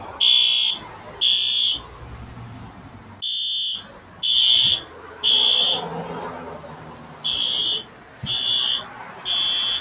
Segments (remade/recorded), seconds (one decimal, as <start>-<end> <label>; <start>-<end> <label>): 0.0-9.8 recorded